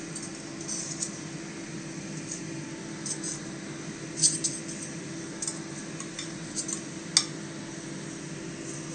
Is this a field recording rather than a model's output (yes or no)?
yes